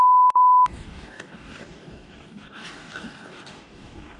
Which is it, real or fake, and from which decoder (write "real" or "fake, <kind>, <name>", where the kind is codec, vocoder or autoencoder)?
fake, codec, DAC